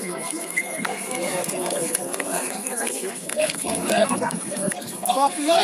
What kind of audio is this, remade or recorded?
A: remade